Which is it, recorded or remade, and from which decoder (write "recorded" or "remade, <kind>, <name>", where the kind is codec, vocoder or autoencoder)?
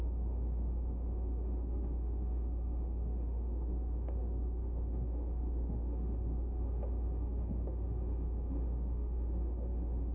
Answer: remade, autoencoder, DAC-VAE